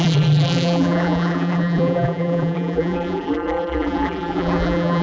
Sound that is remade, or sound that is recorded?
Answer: remade